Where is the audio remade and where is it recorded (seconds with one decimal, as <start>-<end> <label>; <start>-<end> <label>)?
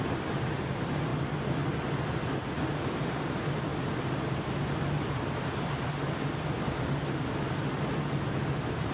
0.0-1.1 remade; 1.1-2.1 recorded; 2.1-3.7 remade; 3.7-8.9 recorded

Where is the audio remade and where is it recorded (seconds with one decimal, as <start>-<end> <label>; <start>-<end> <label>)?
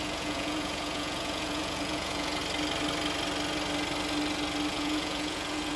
0.0-2.4 remade; 2.4-4.7 recorded; 4.7-5.8 remade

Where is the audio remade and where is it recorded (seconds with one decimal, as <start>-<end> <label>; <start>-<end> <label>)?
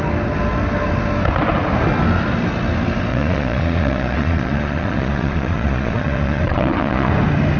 0.0-3.1 recorded; 3.1-7.1 remade; 7.1-7.6 recorded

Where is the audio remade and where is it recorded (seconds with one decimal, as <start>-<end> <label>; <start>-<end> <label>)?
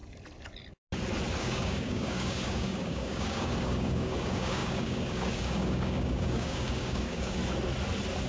0.0-1.4 recorded; 1.4-7.4 remade; 7.4-8.3 recorded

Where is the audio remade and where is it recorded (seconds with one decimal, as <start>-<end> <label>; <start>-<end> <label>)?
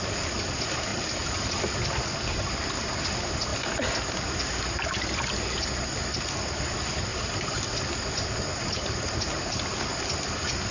0.0-0.9 recorded; 0.9-1.6 remade; 1.6-10.7 recorded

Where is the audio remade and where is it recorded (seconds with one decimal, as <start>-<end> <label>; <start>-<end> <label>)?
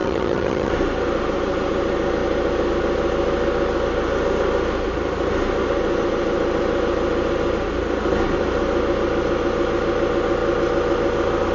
0.0-0.7 remade; 0.7-11.5 recorded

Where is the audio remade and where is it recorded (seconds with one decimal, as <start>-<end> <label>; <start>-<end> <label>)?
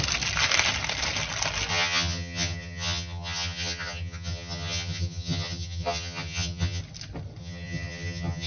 0.0-1.7 recorded; 1.7-6.8 remade; 6.8-7.4 recorded; 7.4-8.5 remade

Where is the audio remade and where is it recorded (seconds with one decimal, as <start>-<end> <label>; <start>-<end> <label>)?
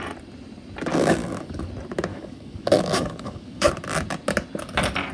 0.0-0.9 recorded; 0.9-1.7 remade; 1.7-2.1 recorded; 2.1-3.7 remade; 3.7-5.1 recorded